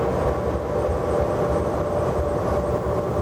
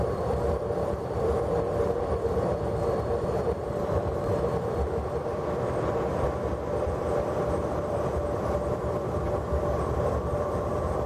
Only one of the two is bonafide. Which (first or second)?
first